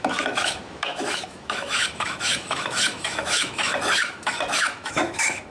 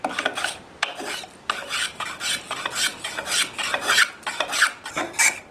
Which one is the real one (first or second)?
second